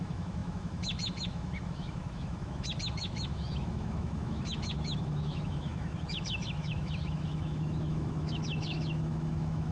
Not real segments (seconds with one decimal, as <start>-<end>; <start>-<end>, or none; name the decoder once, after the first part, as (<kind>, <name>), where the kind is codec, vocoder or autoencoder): 0.0-9.7 (autoencoder, DAC-VAE)